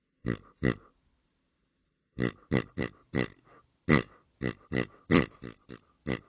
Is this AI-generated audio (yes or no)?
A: no